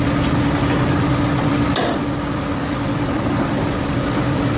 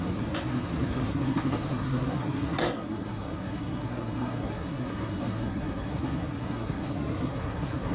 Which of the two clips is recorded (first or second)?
first